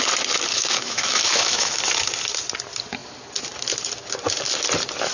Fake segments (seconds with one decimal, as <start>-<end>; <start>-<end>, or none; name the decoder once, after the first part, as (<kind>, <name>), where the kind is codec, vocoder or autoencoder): 0.5-1.8 (autoencoder, DAC-VAE)